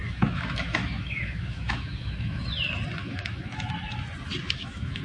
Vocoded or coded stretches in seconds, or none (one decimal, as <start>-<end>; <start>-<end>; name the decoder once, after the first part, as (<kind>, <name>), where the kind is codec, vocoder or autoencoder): 0.0-2.4 (autoencoder, DAC-VAE); 3.0-3.7; 4.4-5.0

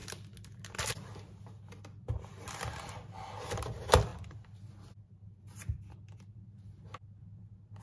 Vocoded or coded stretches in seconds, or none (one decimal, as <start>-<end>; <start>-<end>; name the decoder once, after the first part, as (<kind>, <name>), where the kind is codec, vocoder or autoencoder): none